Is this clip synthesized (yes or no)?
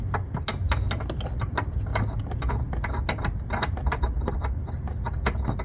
no